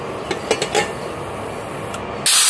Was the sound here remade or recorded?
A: recorded